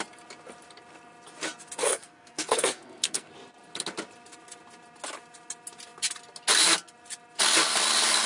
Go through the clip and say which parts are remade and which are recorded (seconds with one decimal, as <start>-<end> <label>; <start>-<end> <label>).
0.0-1.8 recorded; 1.8-3.3 remade; 3.3-8.3 recorded

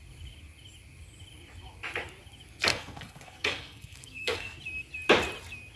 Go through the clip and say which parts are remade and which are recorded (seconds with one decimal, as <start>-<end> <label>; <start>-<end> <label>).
0.0-2.7 recorded; 2.7-4.6 remade; 4.6-5.8 recorded